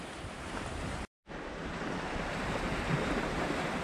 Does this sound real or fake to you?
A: fake